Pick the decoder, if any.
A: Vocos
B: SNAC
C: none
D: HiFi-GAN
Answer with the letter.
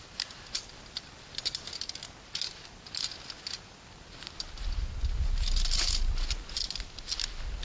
C